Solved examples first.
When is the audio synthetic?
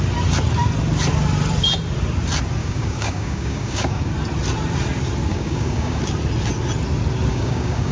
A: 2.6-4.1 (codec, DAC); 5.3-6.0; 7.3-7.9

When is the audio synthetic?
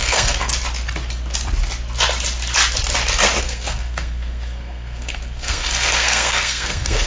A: 0.0-0.5 (codec, SNAC); 3.4-7.1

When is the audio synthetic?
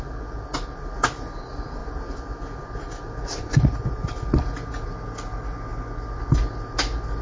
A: none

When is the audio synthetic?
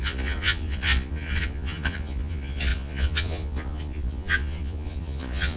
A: 0.0-5.6 (vocoder, Vocos)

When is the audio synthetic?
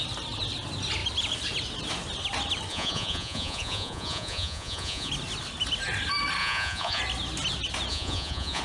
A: 2.7-5.1 (vocoder, Vocos); 6.4-7.0; 7.9-8.6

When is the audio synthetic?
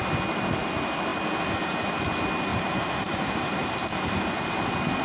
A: 2.5-3.7 (vocoder, BigVGAN v2)